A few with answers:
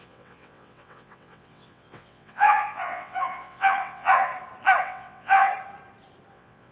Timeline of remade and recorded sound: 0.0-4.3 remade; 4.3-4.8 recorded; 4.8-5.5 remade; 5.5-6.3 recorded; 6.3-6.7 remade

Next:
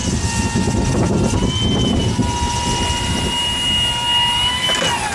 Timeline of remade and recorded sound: 0.0-5.1 recorded

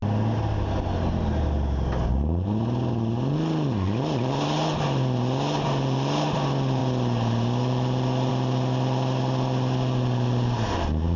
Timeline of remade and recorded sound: 0.0-11.2 recorded

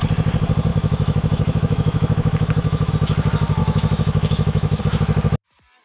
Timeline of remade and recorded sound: 0.0-0.7 recorded; 0.7-2.9 remade; 2.9-3.6 recorded; 3.6-4.8 remade; 4.8-5.8 recorded

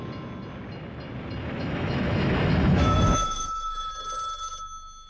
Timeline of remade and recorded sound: 0.0-1.6 recorded; 1.6-3.9 remade; 3.9-5.1 recorded

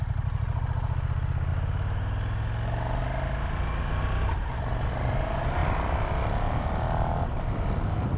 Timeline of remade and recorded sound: 0.0-8.2 recorded

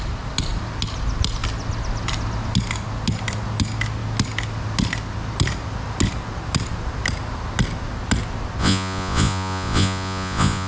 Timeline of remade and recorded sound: 0.0-8.6 recorded; 8.6-10.7 remade